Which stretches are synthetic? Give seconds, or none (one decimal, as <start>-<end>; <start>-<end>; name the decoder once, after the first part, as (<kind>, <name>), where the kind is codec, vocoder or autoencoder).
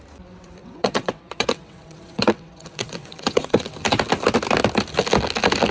0.6-3.7 (vocoder, WaveNeXt)